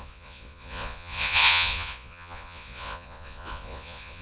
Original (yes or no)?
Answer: no